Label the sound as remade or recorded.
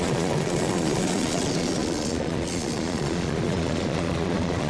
remade